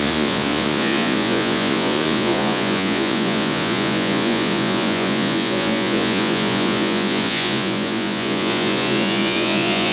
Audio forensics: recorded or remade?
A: remade